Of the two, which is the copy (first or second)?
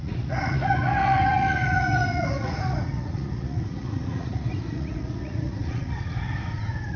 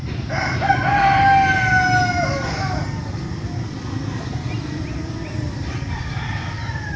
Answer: first